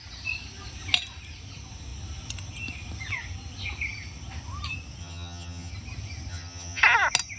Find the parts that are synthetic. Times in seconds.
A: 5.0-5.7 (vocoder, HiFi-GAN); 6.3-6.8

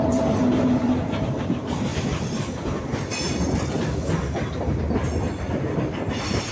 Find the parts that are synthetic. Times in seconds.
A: 0.0-1.9 (vocoder, BigVGAN v2); 5.8-6.5

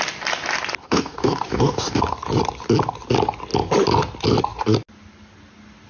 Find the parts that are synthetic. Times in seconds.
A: 0.8-2.0 (codec, DAC)

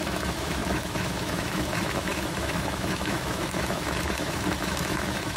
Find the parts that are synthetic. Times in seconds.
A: 0.0-5.4 (autoencoder, DAC-VAE)